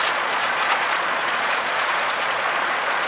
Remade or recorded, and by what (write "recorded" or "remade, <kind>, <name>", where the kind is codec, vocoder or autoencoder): remade, vocoder, Vocos